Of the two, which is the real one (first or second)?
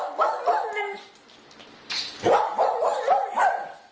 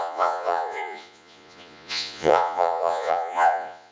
first